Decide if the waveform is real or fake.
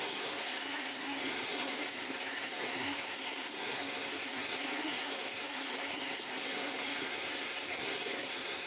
fake